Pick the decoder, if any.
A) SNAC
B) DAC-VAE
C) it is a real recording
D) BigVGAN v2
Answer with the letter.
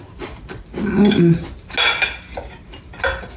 C